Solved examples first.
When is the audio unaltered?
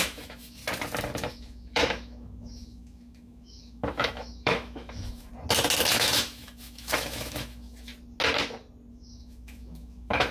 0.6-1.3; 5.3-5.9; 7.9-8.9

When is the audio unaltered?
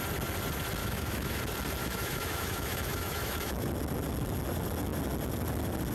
0.0-0.8; 1.4-1.8; 3.7-5.9